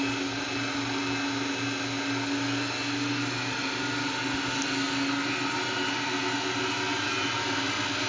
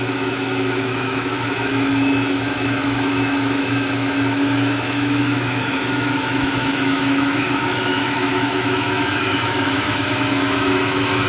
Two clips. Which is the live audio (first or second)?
first